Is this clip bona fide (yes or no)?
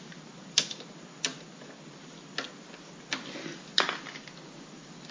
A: yes